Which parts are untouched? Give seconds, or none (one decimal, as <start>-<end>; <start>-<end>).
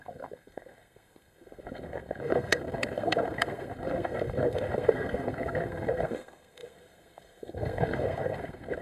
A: none